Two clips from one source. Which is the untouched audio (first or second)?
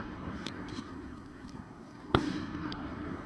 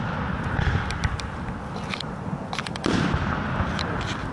second